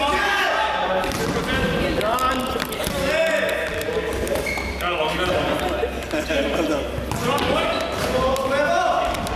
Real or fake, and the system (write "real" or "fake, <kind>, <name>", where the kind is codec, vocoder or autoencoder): real